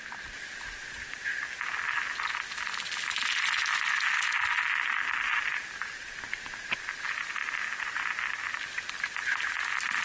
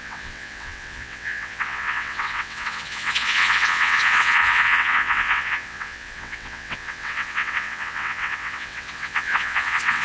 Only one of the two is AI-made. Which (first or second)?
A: second